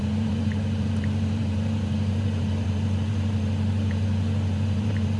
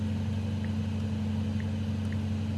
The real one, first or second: second